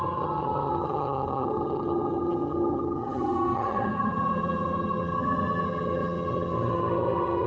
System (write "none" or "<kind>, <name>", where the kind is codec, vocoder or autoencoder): vocoder, HiFi-GAN